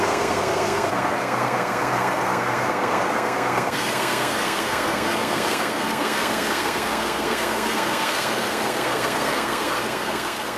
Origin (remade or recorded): remade